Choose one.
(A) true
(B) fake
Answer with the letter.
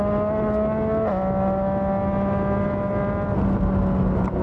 A